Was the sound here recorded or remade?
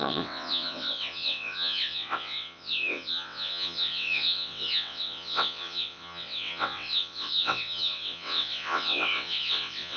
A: remade